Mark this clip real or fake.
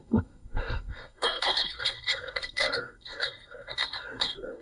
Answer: fake